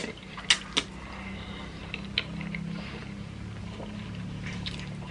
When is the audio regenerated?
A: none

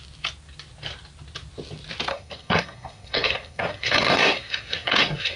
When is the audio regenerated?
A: 2.1-5.4 (codec, SNAC)

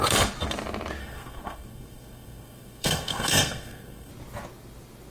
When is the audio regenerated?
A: 1.0-4.1 (codec, SNAC)

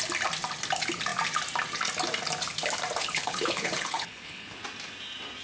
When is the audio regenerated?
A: 3.0-4.6 (codec, HILCodec)